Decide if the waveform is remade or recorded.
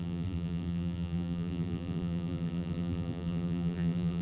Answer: remade